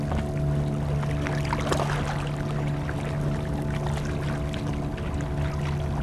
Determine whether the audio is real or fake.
real